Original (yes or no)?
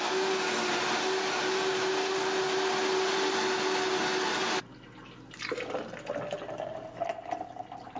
yes